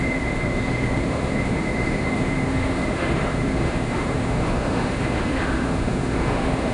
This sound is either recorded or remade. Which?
remade